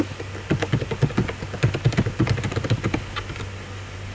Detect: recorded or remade recorded